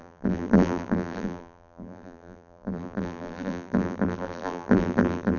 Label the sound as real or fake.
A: fake